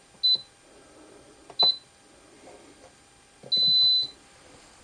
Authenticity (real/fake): real